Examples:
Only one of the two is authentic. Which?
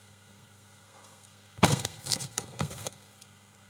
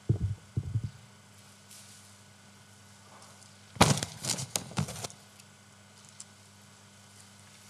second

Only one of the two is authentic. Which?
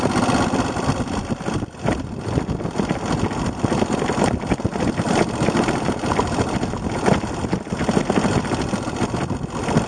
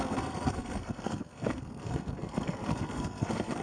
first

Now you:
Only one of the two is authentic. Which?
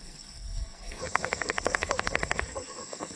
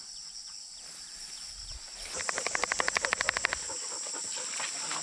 second